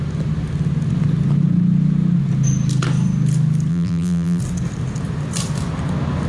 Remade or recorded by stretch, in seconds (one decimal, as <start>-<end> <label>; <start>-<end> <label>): 0.0-3.7 recorded; 3.7-4.4 remade; 4.4-6.3 recorded